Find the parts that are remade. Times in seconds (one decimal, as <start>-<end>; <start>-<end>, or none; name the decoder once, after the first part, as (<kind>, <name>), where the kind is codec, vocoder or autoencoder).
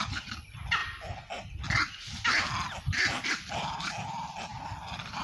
none